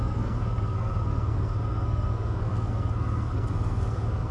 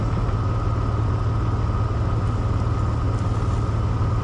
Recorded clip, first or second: second